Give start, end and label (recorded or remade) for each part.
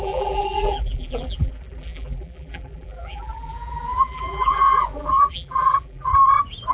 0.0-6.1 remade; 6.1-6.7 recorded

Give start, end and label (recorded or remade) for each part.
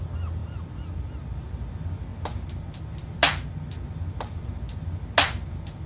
0.0-5.9 recorded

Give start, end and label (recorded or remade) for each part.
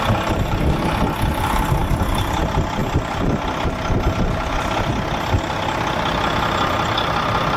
0.0-7.6 recorded